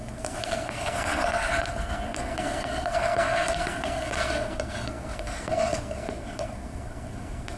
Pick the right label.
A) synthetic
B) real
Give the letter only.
A